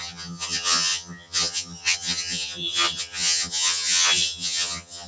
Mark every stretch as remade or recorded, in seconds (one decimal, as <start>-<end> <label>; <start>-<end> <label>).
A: 0.0-5.1 remade